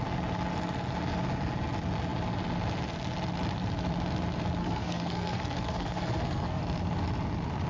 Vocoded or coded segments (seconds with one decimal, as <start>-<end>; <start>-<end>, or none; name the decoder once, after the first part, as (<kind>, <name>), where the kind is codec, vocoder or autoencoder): 4.6-6.6 (codec, SNAC)

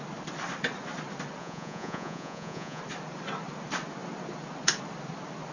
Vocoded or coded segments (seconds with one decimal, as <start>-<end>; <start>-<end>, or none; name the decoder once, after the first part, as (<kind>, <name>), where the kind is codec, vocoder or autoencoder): 1.4-2.8 (vocoder, Vocos)

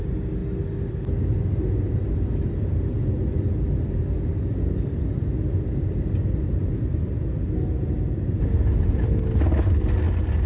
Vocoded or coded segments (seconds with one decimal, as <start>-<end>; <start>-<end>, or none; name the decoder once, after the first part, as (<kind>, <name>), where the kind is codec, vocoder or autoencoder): none